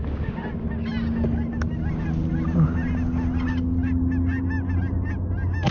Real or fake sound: real